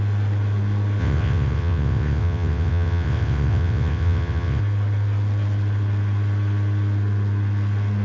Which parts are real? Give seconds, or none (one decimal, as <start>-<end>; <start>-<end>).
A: 0.0-1.0; 4.6-8.0